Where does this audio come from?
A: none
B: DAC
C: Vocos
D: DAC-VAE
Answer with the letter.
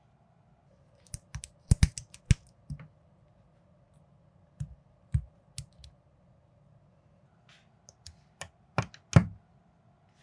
A